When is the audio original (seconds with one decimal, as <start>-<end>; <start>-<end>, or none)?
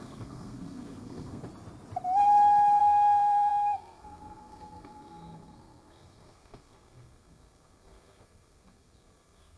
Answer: 1.4-2.8